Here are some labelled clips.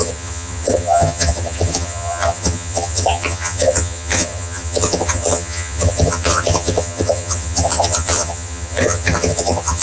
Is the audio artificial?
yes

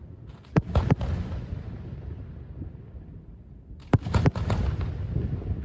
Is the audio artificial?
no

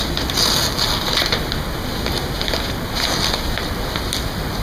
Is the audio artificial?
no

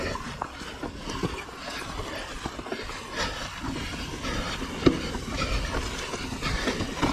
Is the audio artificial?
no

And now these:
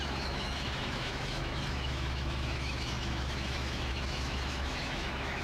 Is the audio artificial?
yes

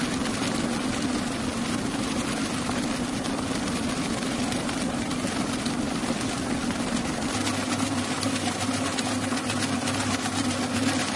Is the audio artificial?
no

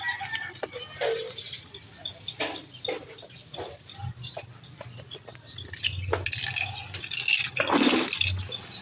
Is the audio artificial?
no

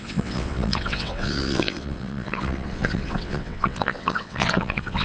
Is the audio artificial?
yes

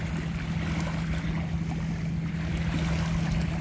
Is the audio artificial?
no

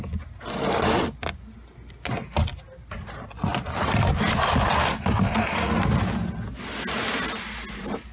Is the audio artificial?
no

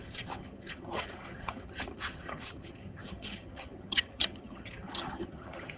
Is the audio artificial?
yes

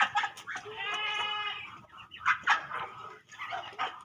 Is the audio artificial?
no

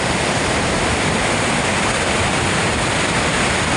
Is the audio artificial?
no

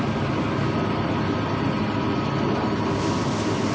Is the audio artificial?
no